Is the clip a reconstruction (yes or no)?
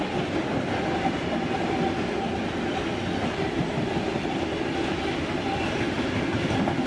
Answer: no